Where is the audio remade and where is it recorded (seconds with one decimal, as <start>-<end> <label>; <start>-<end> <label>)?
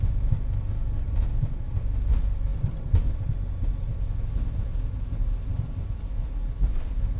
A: 0.0-7.2 recorded